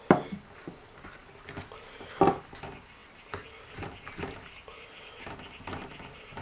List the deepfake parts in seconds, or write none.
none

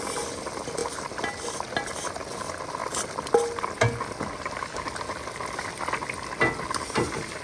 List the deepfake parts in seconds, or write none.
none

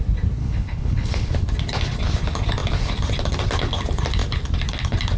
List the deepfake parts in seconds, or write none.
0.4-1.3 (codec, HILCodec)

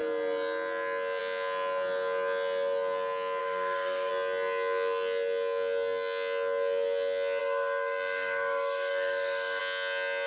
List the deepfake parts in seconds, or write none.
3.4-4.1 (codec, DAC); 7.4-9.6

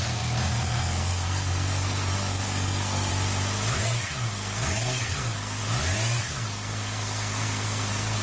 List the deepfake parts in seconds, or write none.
0.0-3.1 (codec, SNAC); 3.8-5.6; 6.2-8.2

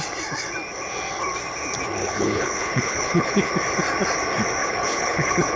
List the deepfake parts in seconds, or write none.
2.0-3.5 (codec, HILCodec); 4.6-5.6